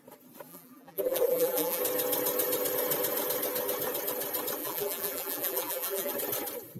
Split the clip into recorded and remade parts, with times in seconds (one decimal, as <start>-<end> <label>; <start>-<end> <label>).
0.0-0.5 recorded; 0.5-1.8 remade; 1.8-4.6 recorded; 4.6-6.1 remade; 6.1-6.8 recorded